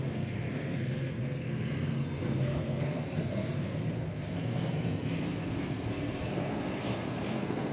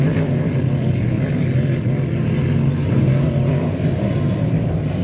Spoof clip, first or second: first